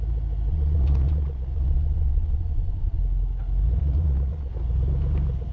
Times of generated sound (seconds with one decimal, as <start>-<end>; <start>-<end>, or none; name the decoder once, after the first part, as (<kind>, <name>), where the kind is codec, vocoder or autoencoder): 0.5-3.0 (vocoder, Vocos); 3.8-4.5